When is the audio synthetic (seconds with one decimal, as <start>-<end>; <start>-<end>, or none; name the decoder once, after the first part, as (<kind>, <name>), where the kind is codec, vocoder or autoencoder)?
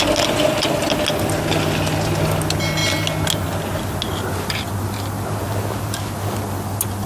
none